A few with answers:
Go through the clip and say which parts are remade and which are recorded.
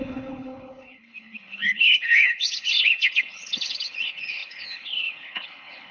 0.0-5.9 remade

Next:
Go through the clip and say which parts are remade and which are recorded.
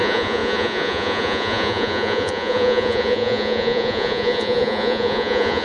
0.0-5.6 remade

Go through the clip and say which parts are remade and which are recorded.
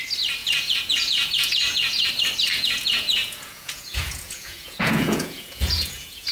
0.0-0.4 recorded; 0.4-2.1 remade; 2.1-2.5 recorded; 2.5-6.3 remade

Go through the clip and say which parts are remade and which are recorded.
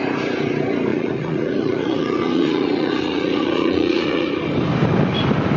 0.0-0.9 recorded; 0.9-4.3 remade; 4.3-5.6 recorded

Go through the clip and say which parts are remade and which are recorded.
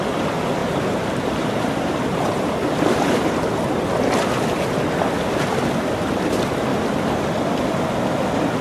0.0-0.6 recorded; 0.6-3.3 remade; 3.3-8.6 recorded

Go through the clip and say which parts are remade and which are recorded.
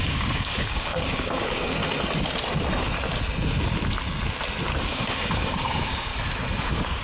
0.0-1.8 remade; 1.8-4.7 recorded; 4.7-6.1 remade; 6.1-6.6 recorded; 6.6-7.0 remade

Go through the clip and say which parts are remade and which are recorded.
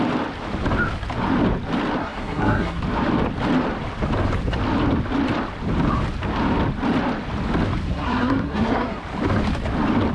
0.0-2.0 recorded; 2.0-2.8 remade; 2.8-7.9 recorded; 7.9-9.0 remade; 9.0-10.1 recorded